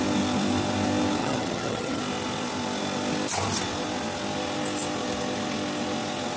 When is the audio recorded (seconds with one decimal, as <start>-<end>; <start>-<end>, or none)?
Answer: 0.0-1.2; 2.0-6.4